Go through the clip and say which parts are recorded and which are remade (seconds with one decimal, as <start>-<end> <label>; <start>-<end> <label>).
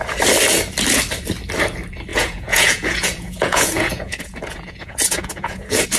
0.0-2.1 recorded; 2.1-6.0 remade